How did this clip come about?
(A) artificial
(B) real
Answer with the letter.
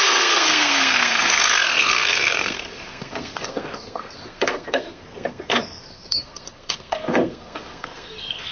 A